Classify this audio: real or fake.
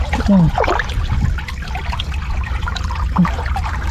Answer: real